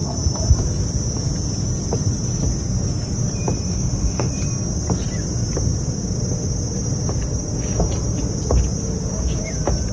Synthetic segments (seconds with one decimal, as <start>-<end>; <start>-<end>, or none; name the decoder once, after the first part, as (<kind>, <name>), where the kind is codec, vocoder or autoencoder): 3.7-4.3 (autoencoder, DAC-VAE)